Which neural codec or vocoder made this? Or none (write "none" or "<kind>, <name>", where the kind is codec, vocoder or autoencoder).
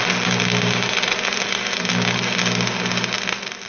none